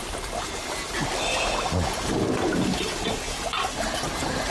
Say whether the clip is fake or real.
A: real